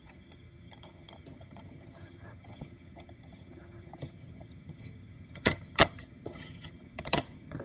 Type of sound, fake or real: fake